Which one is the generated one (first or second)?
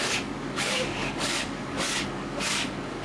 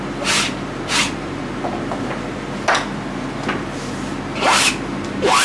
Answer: first